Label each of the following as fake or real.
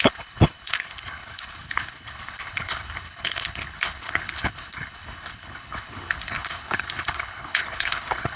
fake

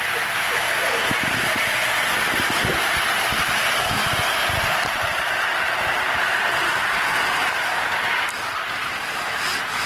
real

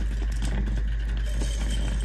real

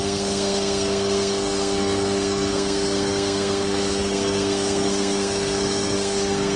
fake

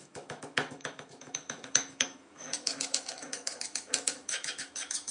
fake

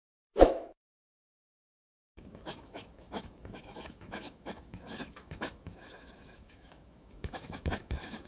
fake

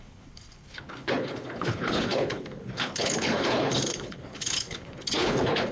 fake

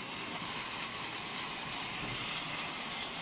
real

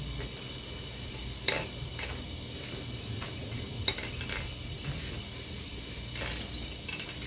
real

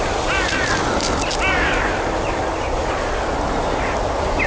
real